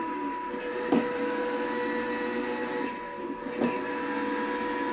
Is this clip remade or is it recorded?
recorded